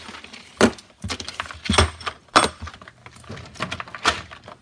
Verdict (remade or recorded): recorded